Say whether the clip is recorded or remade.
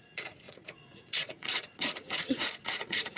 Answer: remade